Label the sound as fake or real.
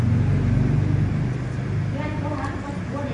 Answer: real